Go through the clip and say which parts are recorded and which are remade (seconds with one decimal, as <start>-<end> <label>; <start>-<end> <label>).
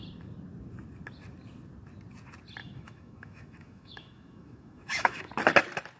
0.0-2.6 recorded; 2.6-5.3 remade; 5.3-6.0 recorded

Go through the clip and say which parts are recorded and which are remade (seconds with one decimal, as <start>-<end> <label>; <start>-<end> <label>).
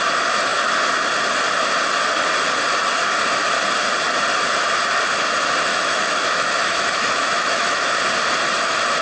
0.0-5.7 recorded; 5.7-7.8 remade; 7.8-9.0 recorded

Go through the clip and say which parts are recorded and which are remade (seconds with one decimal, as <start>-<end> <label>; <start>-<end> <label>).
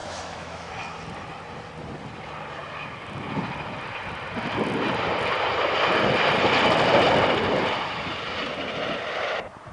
0.0-0.7 remade; 0.7-9.7 recorded